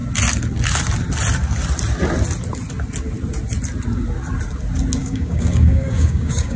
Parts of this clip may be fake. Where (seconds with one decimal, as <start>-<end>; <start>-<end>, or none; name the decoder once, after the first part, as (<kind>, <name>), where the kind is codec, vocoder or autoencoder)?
5.0-6.6 (codec, DAC)

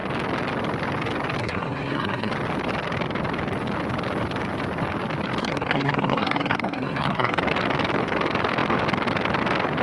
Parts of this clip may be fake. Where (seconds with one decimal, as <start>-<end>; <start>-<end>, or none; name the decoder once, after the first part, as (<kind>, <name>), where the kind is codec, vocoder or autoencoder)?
1.4-2.3 (codec, SNAC); 5.4-7.4

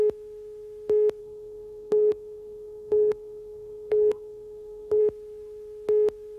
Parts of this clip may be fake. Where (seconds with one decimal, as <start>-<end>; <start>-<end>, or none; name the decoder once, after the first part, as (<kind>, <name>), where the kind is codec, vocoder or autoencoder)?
1.2-5.0 (codec, SNAC)

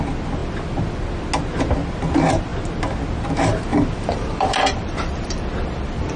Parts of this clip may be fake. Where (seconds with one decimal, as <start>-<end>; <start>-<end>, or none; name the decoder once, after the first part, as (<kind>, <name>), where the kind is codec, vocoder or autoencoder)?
3.7-5.8 (vocoder, BigVGAN v2)

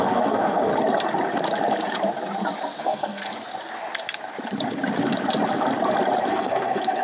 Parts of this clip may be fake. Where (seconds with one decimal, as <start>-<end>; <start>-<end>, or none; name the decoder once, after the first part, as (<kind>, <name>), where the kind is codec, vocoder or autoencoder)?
0.0-0.7 (codec, SNAC); 2.8-3.2; 6.3-7.0

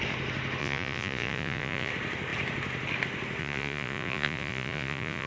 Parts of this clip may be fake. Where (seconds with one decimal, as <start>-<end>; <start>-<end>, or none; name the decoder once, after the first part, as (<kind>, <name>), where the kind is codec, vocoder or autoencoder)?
0.6-1.9 (vocoder, Vocos); 3.4-5.3

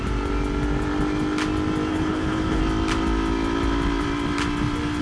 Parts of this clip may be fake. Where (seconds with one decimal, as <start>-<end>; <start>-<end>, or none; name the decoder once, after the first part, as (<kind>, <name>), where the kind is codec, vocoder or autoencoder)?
1.9-2.6 (codec, HILCodec)